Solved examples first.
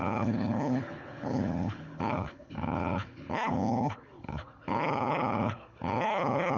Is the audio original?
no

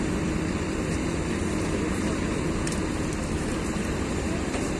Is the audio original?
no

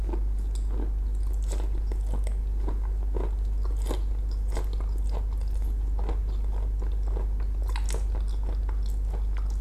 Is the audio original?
yes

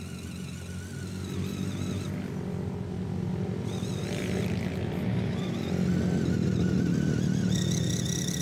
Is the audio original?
yes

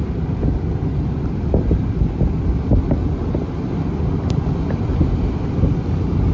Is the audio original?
yes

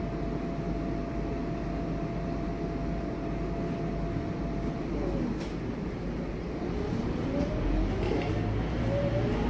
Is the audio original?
yes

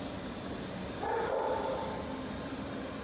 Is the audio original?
yes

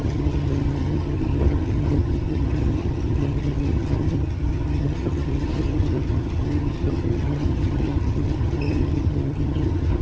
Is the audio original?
no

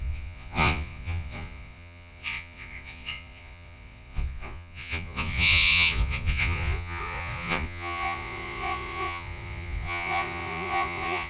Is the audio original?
no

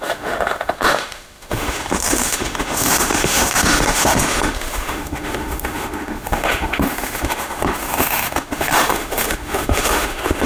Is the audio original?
no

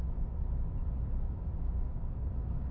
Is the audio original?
yes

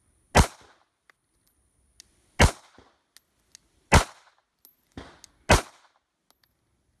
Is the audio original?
yes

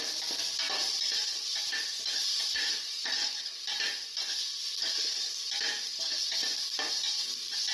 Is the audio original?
yes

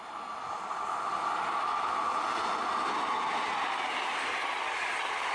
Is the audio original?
yes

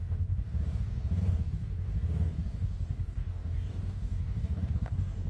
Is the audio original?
no